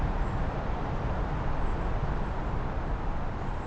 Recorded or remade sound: recorded